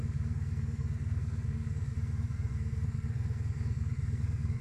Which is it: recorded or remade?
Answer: remade